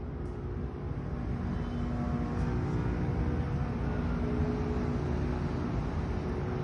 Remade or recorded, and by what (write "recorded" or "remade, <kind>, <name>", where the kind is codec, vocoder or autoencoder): recorded